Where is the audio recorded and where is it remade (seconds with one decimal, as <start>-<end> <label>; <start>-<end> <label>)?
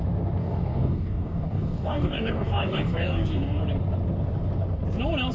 0.0-0.4 recorded; 0.4-3.6 remade; 3.6-5.3 recorded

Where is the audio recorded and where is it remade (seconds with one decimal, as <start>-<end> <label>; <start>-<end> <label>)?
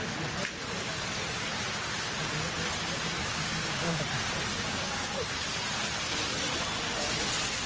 0.0-3.2 recorded; 3.2-4.0 remade; 4.0-4.5 recorded; 4.5-5.3 remade; 5.3-7.7 recorded